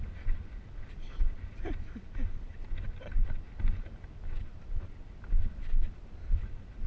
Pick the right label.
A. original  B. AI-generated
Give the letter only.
A